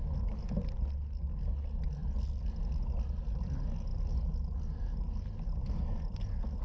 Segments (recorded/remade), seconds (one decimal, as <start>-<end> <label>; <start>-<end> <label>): 0.0-6.6 recorded